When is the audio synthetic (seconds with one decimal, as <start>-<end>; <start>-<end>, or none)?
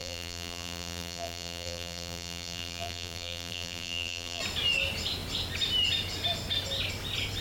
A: 0.0-4.4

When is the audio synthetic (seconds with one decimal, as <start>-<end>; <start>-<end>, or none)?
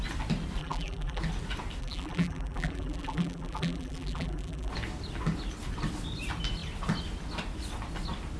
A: 0.6-1.2; 1.8-4.7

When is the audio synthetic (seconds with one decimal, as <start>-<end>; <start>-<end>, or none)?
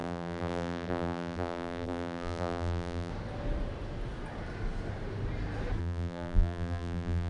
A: 0.0-3.1; 5.8-7.3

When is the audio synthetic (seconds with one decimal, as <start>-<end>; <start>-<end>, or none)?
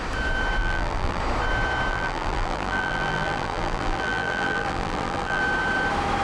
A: 0.6-1.2; 1.9-5.4